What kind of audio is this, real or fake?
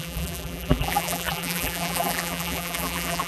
fake